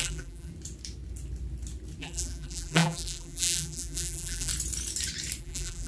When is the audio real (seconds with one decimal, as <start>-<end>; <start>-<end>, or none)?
0.5-2.0; 4.5-5.4